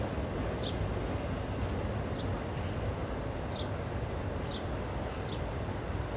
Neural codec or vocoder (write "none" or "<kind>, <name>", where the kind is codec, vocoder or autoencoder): none